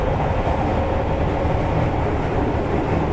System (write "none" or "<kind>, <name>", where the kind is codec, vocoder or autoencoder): none